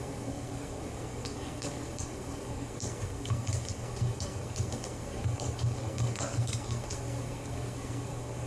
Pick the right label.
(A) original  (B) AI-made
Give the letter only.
B